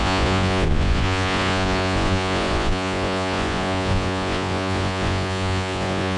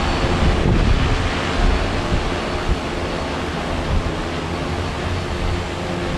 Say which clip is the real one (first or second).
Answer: second